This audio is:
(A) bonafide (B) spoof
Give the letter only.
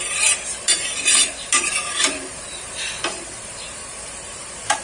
B